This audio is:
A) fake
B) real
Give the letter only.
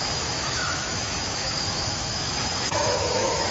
A